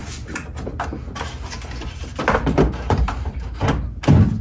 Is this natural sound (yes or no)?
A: yes